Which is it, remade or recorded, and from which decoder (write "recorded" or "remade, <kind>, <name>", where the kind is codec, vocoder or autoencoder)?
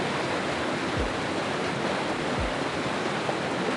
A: recorded